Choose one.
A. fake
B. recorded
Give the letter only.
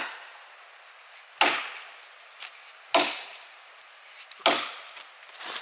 B